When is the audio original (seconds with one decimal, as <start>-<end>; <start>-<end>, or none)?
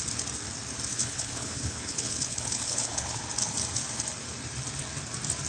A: 0.0-0.9; 3.2-5.5